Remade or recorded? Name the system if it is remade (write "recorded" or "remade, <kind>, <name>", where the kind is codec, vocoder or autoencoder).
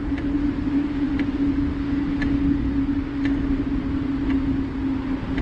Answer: recorded